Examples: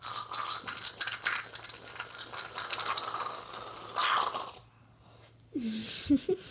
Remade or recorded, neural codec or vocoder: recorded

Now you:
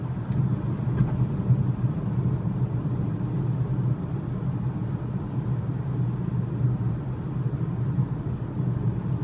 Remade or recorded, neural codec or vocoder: recorded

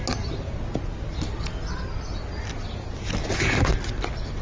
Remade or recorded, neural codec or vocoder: recorded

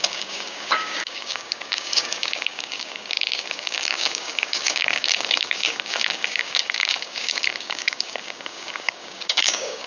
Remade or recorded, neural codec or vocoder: remade, codec, DAC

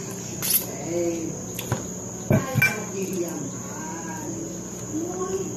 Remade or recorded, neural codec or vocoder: recorded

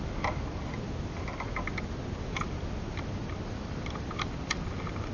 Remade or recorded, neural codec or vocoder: recorded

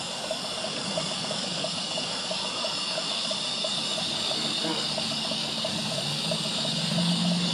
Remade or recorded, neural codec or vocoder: remade, codec, DAC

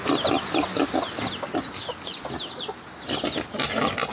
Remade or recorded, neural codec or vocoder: recorded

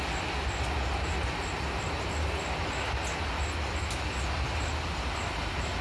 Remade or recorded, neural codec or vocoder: recorded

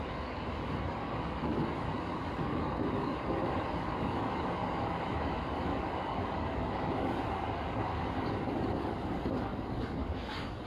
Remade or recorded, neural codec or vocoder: remade, codec, DAC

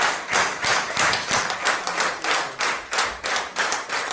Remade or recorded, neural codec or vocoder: recorded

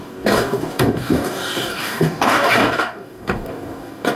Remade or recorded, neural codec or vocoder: remade, codec, DAC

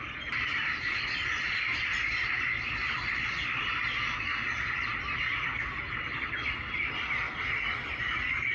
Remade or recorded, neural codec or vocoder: recorded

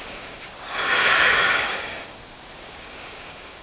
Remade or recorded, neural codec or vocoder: remade, codec, DAC